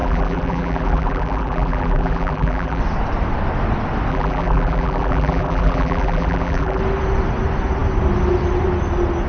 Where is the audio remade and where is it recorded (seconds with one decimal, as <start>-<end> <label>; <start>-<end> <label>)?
0.0-2.8 remade; 2.8-4.1 recorded; 4.1-6.8 remade; 6.8-9.3 recorded